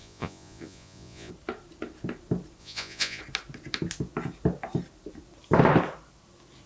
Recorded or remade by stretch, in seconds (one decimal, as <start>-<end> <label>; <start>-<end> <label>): 0.0-1.3 remade; 1.3-2.6 recorded; 2.6-3.2 remade; 3.2-6.7 recorded